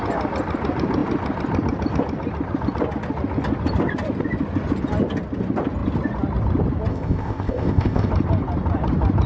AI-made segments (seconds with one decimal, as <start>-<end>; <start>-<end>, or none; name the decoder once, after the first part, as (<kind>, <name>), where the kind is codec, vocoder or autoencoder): 6.9-8.1 (codec, ZipCodec)